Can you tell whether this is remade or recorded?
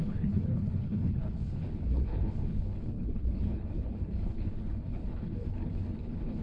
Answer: remade